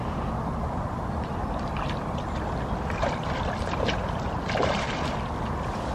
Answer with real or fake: real